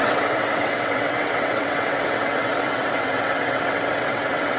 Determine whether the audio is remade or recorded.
remade